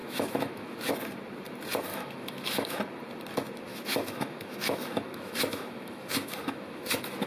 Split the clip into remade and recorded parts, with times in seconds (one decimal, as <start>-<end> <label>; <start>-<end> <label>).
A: 0.0-0.9 remade; 0.9-1.9 recorded; 1.9-2.8 remade; 2.8-3.7 recorded; 3.7-7.3 remade